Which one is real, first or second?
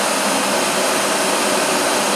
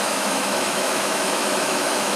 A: first